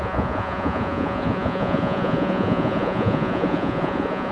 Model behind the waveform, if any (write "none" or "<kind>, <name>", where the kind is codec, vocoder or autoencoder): vocoder, Vocos